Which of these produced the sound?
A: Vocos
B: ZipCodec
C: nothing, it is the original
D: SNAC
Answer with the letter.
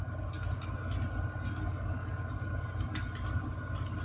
C